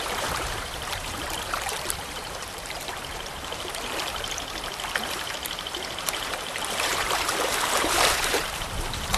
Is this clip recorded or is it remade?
remade